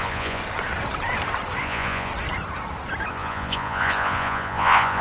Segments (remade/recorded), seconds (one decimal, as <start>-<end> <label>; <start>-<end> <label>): 0.0-0.4 remade; 0.4-1.6 recorded; 1.6-2.1 remade; 2.1-3.1 recorded; 3.1-5.0 remade